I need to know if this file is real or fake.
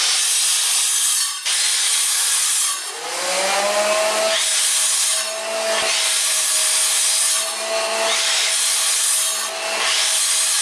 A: real